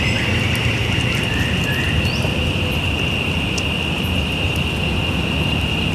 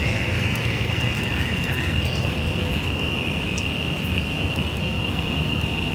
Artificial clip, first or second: second